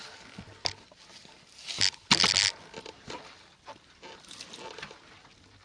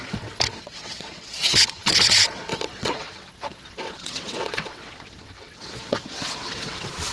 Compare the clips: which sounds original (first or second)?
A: first